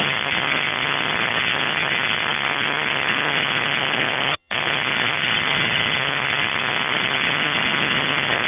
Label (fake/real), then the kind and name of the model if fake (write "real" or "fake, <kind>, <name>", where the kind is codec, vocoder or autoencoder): fake, vocoder, HiFi-GAN